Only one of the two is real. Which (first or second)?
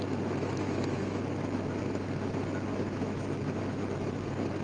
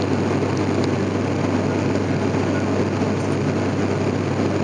second